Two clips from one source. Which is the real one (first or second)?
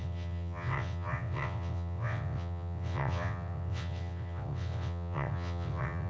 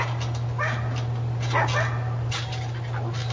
second